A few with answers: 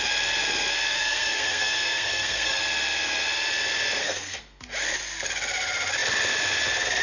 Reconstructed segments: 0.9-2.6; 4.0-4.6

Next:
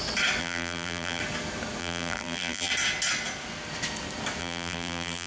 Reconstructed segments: 0.4-1.2; 1.8-2.7; 4.4-5.3

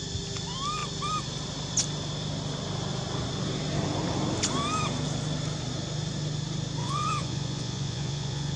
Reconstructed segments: 6.8-8.6

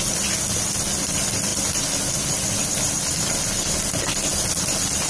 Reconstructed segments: none

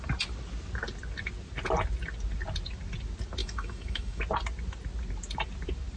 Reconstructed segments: 3.4-4.2